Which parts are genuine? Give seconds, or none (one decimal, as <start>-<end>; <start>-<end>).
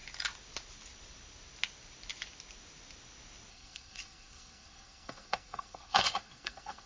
0.0-3.5